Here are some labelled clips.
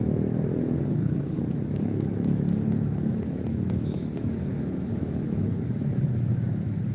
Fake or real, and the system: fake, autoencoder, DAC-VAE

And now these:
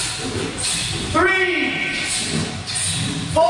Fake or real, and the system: real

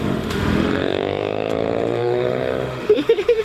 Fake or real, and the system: fake, autoencoder, DAC-VAE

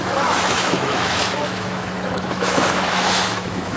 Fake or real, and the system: fake, autoencoder, DAC-VAE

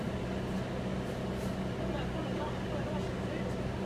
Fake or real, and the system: real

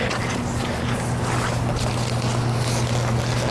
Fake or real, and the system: real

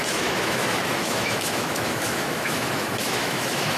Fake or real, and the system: fake, autoencoder, DAC-VAE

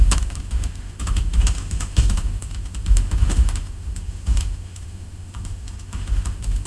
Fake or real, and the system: fake, autoencoder, DAC-VAE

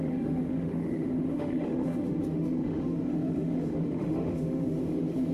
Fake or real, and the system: fake, autoencoder, DAC-VAE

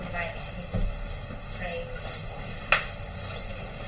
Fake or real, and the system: real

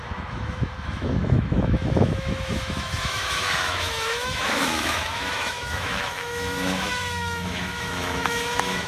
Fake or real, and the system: fake, autoencoder, DAC-VAE